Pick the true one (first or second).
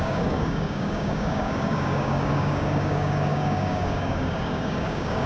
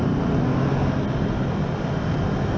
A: second